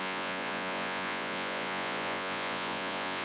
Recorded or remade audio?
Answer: remade